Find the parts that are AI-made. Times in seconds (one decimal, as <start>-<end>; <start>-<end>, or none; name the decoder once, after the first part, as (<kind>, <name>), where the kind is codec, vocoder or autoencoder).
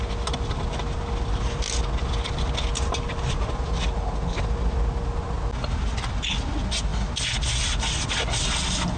none